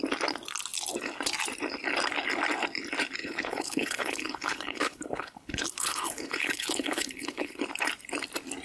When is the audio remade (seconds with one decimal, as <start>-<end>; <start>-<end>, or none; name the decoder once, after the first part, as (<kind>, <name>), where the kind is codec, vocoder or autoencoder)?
3.2-7.6 (codec, HILCodec)